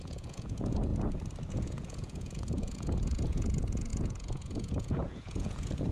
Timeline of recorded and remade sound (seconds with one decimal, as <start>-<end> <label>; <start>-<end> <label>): 0.0-0.9 remade; 0.9-1.5 recorded; 1.5-5.9 remade